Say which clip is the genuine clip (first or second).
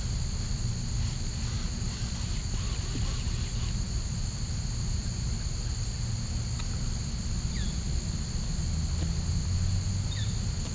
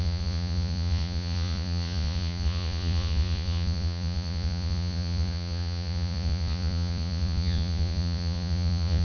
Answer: first